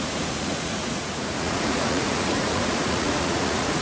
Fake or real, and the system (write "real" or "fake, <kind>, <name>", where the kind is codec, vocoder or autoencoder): fake, vocoder, Vocos